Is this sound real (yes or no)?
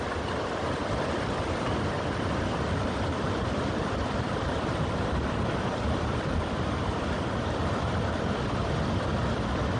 yes